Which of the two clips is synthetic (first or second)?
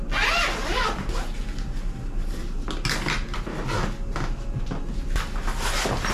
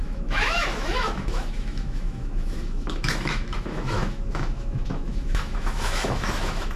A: second